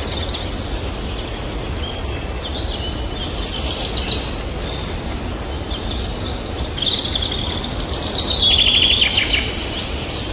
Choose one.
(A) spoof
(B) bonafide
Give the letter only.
B